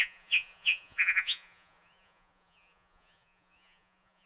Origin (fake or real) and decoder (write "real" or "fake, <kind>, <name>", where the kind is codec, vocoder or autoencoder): fake, vocoder, Vocos